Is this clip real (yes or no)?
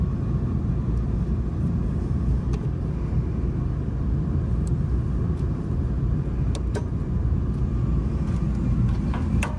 yes